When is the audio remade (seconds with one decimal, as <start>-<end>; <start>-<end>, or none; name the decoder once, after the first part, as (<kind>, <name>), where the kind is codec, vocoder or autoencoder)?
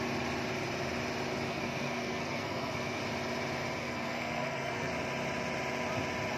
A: 1.5-3.0 (codec, SNAC); 3.8-4.9